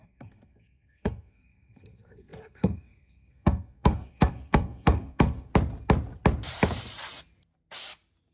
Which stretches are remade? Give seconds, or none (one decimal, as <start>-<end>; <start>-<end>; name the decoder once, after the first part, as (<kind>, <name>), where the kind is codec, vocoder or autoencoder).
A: 0.0-5.5 (codec, SNAC)